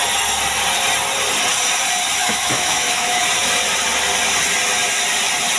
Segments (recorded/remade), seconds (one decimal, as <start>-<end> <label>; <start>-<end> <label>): 0.0-2.2 recorded; 2.2-3.2 remade; 3.2-5.6 recorded